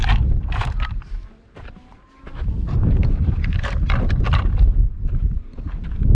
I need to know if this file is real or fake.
fake